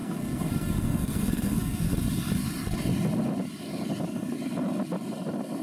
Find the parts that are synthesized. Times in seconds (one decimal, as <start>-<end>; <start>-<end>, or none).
0.0-1.9